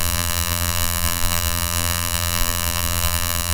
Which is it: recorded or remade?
remade